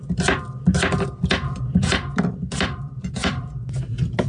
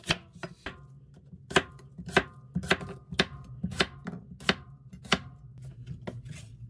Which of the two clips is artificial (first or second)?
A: first